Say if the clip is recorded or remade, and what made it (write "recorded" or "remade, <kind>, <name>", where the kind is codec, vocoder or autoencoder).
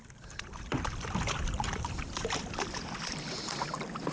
remade, vocoder, BigVGAN v2